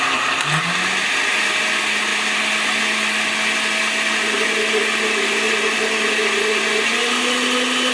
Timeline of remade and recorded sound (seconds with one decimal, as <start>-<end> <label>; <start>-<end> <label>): 0.0-7.9 recorded